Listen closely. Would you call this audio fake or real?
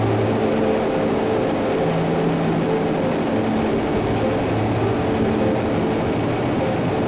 real